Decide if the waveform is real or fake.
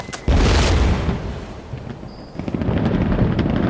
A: real